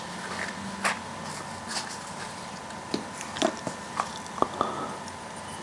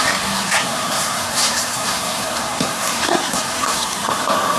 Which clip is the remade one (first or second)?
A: second